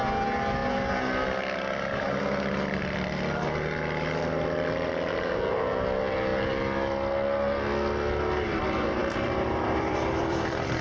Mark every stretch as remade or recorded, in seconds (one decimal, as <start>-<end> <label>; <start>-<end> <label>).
0.0-9.0 recorded; 9.0-10.8 remade